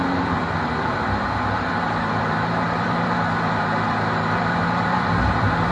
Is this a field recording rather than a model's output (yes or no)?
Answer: no